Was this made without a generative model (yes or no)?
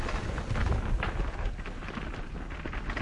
yes